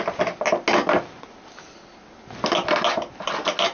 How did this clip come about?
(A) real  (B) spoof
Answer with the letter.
A